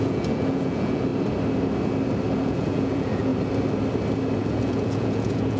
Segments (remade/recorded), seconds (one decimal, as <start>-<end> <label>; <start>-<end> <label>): 0.0-1.1 remade; 1.1-2.3 recorded; 2.3-3.3 remade; 3.3-4.4 recorded; 4.4-5.6 remade